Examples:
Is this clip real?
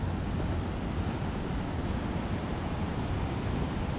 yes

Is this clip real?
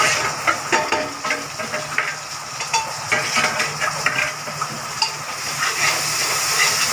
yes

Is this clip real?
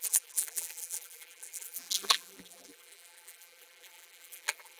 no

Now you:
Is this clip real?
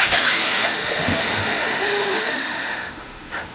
no